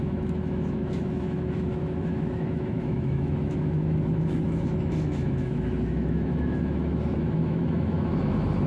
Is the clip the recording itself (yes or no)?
no